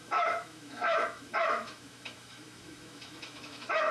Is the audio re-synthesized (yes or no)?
yes